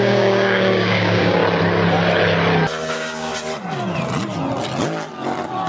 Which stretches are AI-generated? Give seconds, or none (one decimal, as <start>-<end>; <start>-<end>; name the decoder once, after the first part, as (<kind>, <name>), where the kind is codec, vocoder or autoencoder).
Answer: 0.0-1.4 (codec, DAC); 2.9-3.3